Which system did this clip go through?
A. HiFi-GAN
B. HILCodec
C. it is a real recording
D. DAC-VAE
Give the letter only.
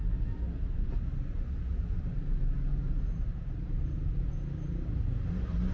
C